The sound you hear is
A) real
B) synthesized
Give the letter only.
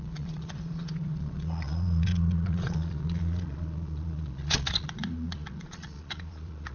B